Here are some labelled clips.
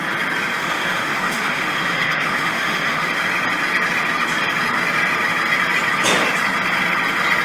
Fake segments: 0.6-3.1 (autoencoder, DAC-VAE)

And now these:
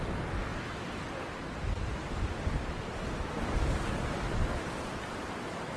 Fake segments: 0.5-1.0 (vocoder, BigVGAN v2); 2.0-2.5; 4.4-5.1

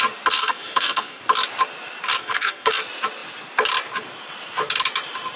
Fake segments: 0.4-1.2 (codec, SNAC); 2.2-2.8